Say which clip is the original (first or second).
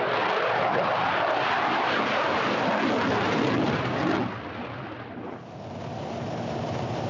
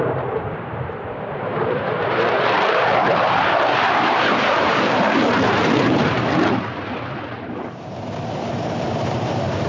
first